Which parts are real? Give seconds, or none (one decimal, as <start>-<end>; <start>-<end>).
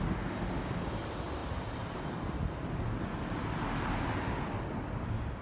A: 0.0-5.4